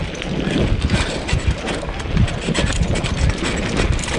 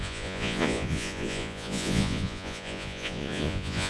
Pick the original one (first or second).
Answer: first